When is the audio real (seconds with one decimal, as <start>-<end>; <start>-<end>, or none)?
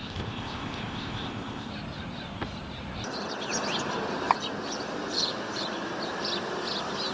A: 1.7-7.1